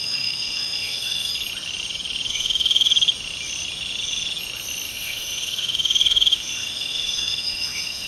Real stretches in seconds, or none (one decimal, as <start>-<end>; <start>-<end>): 1.3-2.3; 2.9-4.9